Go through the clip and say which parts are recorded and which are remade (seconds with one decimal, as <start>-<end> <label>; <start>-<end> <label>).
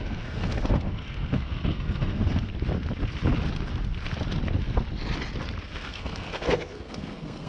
0.0-2.5 remade; 2.5-5.6 recorded; 5.6-7.5 remade